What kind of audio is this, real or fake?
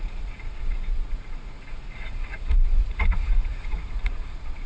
fake